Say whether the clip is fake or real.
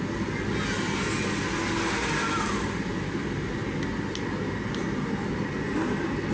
real